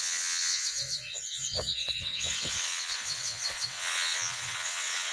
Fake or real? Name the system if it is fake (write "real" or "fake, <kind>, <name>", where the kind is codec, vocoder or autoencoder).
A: fake, vocoder, WaveNeXt